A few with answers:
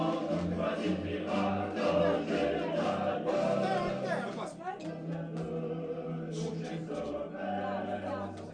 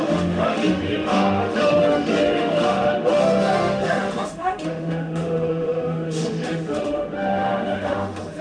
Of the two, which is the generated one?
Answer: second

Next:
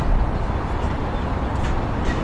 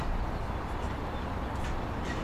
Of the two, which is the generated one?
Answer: first